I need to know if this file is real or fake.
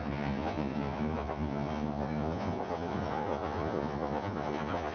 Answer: fake